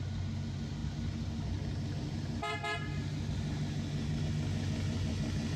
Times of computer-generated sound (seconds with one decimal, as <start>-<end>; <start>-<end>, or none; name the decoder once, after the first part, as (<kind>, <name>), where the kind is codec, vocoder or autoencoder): none